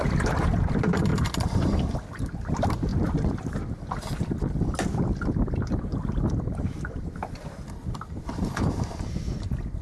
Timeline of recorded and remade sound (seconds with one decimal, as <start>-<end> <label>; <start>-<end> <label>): 0.0-2.9 remade; 2.9-6.3 recorded; 6.3-9.8 remade